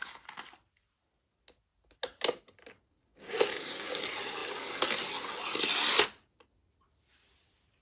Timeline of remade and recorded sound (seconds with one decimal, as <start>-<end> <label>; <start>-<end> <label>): 0.0-3.1 recorded; 3.1-4.0 remade; 4.0-7.8 recorded